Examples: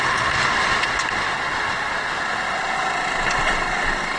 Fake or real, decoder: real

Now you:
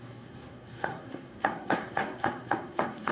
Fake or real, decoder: fake, codec, SNAC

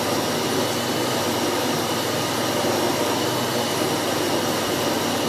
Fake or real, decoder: real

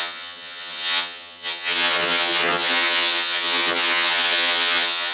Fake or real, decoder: fake, vocoder, HiFi-GAN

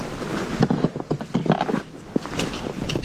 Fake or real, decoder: real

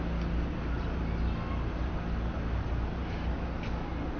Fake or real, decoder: real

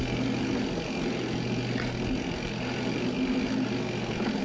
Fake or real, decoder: real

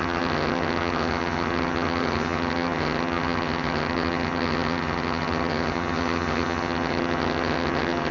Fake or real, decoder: fake, vocoder, HiFi-GAN